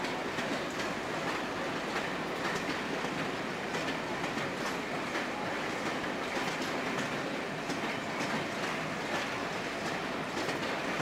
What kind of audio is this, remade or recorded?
recorded